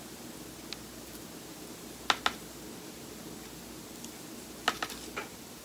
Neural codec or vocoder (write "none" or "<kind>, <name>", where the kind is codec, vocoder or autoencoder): none